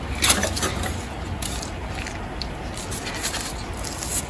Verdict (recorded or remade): recorded